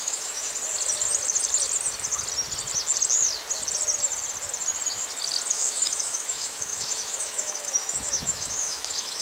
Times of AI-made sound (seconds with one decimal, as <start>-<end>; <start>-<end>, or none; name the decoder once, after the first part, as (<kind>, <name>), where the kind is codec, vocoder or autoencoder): 0.0-0.5 (autoencoder, DAC-VAE); 5.5-9.2